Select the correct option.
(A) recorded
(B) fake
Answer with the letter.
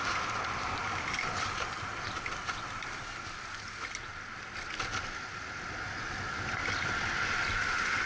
A